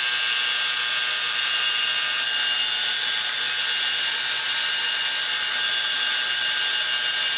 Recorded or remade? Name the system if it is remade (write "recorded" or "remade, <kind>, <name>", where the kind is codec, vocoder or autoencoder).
recorded